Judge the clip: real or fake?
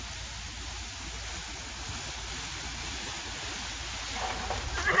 real